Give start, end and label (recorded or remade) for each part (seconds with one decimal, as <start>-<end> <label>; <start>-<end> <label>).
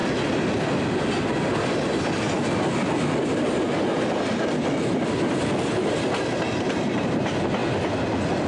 0.0-8.5 recorded